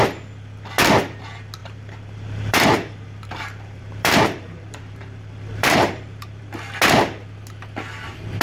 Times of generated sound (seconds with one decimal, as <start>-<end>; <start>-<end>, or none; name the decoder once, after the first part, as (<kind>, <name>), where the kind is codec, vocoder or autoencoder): 1.6-6.4 (vocoder, BigVGAN v2)